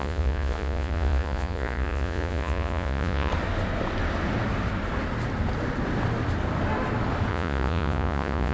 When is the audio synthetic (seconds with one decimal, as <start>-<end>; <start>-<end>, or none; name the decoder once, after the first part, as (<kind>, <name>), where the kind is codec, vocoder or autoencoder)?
0.0-3.3 (vocoder, Vocos); 7.3-8.5